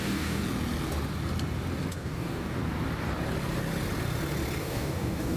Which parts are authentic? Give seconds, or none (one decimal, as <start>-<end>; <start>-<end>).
0.4-1.9; 2.6-4.6